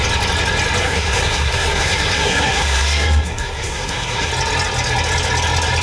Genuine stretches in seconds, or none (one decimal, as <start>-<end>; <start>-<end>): 0.0-0.8; 4.3-5.8